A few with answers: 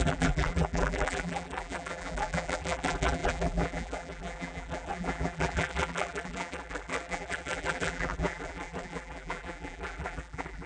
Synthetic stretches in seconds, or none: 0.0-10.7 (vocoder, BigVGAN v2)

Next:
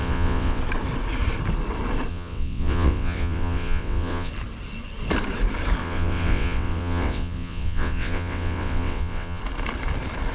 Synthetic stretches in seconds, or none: 0.0-0.6 (vocoder, WaveNeXt); 2.1-4.3; 5.8-9.4

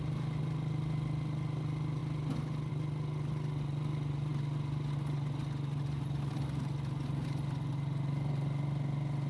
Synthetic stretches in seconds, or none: none

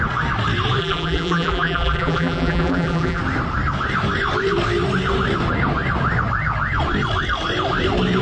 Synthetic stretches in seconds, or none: 0.8-3.2 (vocoder, BigVGAN v2)

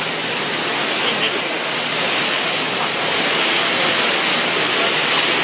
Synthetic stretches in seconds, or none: none

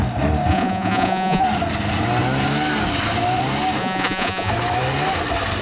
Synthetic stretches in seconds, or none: 0.5-1.4 (vocoder, Vocos); 3.8-4.5

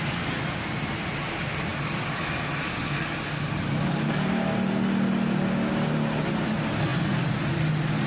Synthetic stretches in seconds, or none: none